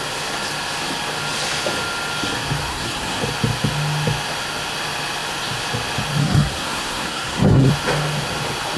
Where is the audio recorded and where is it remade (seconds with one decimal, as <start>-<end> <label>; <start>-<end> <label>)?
0.0-2.7 recorded; 2.7-3.2 remade; 3.2-6.2 recorded; 6.2-7.7 remade; 7.7-8.8 recorded

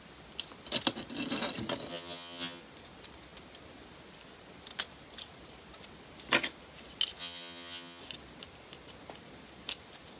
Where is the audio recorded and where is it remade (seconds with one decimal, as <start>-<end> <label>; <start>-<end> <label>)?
0.0-1.9 recorded; 1.9-2.6 remade; 2.6-7.2 recorded; 7.2-8.0 remade; 8.0-10.2 recorded

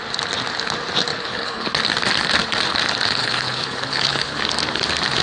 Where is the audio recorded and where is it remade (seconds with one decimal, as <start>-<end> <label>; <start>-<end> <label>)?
0.0-1.1 recorded; 1.1-1.8 remade; 1.8-3.2 recorded; 3.2-4.4 remade; 4.4-5.2 recorded

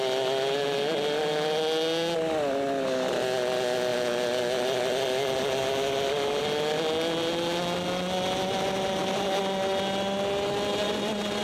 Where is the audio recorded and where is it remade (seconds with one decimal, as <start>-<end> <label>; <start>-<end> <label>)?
0.0-11.4 recorded